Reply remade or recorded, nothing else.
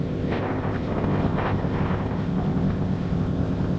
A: remade